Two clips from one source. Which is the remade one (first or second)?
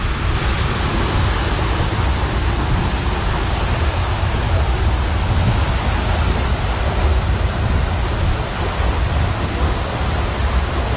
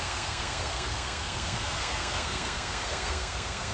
second